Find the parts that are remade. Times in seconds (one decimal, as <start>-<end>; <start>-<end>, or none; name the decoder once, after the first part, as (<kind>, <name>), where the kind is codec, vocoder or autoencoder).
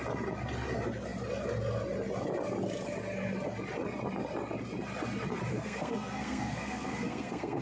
5.5-7.6 (codec, SNAC)